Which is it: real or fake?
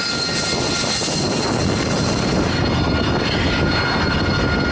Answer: real